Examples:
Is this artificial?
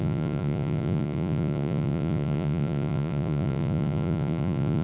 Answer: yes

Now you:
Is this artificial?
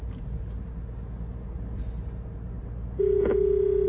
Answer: no